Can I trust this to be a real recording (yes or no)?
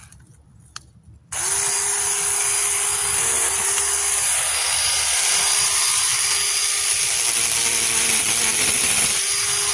yes